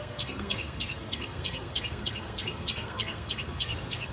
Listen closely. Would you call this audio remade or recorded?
remade